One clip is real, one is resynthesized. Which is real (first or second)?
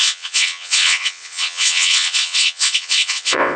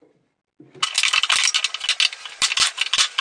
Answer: second